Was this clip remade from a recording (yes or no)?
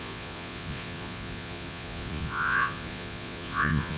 yes